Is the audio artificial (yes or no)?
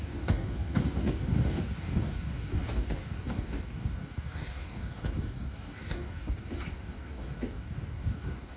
yes